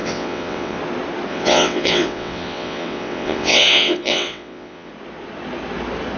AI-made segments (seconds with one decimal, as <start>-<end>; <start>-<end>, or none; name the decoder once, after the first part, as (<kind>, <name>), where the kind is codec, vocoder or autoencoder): 0.0-0.8 (vocoder, WaveNeXt); 1.3-4.9